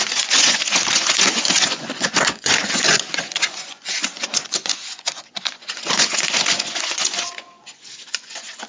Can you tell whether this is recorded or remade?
remade